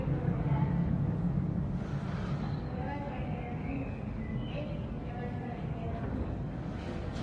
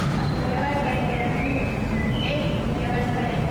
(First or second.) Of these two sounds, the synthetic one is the first